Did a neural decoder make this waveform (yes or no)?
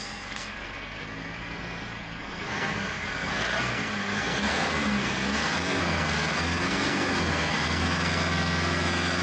yes